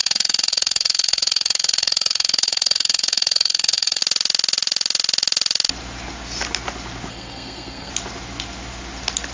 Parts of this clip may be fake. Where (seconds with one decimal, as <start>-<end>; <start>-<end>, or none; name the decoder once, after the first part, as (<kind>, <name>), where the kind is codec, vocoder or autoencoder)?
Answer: 0.0-4.0 (codec, SNAC); 7.1-7.9

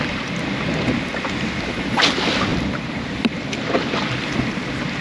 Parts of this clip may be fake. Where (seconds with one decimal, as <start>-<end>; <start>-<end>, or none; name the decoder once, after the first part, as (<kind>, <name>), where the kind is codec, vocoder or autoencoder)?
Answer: 2.5-4.5 (vocoder, BigVGAN v2)

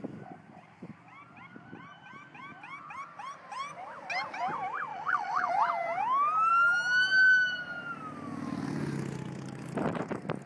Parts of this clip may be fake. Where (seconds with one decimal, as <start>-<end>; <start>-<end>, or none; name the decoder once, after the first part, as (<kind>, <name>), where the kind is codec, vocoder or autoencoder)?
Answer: 4.9-5.5 (vocoder, Vocos)

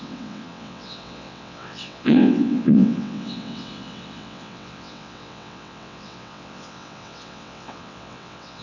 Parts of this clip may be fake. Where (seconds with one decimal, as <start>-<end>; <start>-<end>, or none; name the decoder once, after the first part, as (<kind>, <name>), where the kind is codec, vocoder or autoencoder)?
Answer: 0.0-8.6 (vocoder, WaveNeXt)

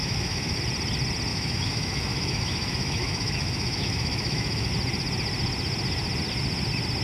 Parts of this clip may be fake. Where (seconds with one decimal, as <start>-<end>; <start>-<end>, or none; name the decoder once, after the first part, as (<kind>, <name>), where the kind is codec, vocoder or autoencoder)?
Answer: 0.0-0.6 (autoencoder, DAC-VAE); 1.3-4.7

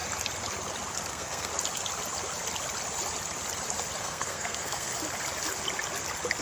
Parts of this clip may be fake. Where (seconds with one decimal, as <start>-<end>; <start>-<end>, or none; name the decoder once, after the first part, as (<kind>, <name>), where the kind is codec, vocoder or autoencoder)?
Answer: 1.1-1.5 (codec, SNAC); 4.0-4.9

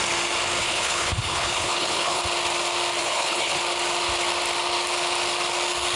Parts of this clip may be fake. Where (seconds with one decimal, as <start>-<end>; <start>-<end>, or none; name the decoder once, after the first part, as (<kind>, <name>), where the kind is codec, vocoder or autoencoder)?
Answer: 0.6-2.2 (codec, HILCodec); 3.0-3.6